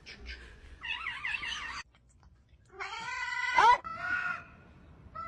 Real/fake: fake